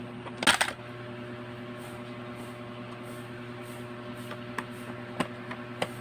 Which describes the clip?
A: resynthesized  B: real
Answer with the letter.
B